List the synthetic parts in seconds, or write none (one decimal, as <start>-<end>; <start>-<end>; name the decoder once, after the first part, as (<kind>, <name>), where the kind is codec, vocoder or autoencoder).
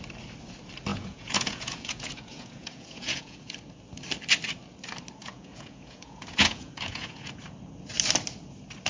0.9-3.5 (vocoder, Vocos); 5.2-7.3